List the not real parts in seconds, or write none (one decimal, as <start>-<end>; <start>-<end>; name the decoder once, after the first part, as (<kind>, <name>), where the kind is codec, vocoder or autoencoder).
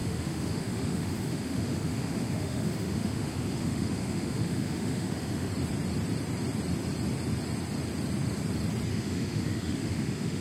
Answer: 0.0-5.5 (autoencoder, DAC-VAE); 8.9-10.4